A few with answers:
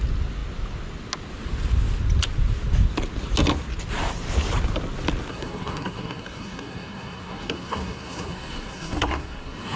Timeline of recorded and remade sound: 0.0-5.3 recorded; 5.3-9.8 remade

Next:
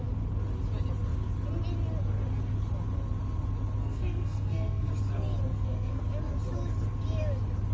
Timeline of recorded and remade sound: 0.0-3.8 recorded; 3.8-4.9 remade; 4.9-5.5 recorded; 5.5-6.0 remade; 6.0-7.7 recorded